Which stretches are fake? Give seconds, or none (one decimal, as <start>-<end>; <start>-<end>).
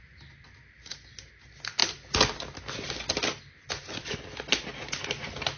none